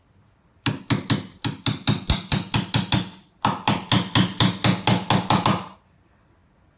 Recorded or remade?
recorded